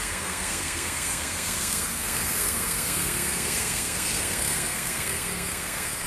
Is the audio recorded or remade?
remade